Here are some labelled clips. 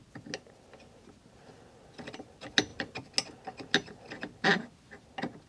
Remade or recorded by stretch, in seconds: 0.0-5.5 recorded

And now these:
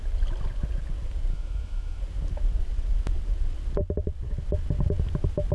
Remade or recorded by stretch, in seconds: 0.0-1.3 recorded; 1.3-2.0 remade; 2.0-5.5 recorded

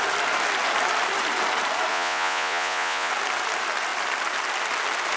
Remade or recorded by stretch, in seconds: 0.0-1.9 recorded; 1.9-3.1 remade; 3.1-5.2 recorded

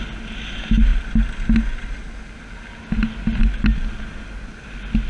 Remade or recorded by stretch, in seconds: 0.0-5.1 recorded

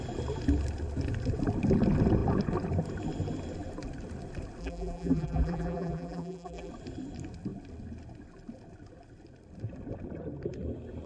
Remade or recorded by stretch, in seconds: 0.0-4.6 recorded; 4.6-6.7 remade; 6.7-11.1 recorded

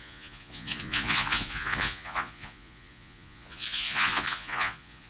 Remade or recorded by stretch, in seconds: 0.0-5.1 remade

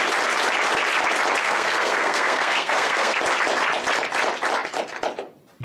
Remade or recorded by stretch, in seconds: 0.0-1.4 recorded; 1.4-3.2 remade; 3.2-5.6 recorded

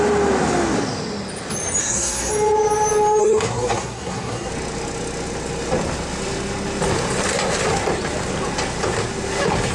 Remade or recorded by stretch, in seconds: 0.0-1.8 recorded; 1.8-2.3 remade; 2.3-3.2 recorded; 3.2-4.5 remade; 4.5-9.7 recorded